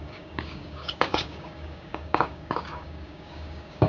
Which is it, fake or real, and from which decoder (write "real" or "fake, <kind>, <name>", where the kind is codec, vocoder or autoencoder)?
fake, codec, DAC